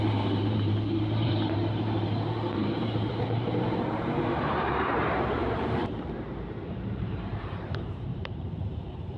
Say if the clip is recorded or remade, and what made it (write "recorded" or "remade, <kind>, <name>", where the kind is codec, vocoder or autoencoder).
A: remade, vocoder, BigVGAN v2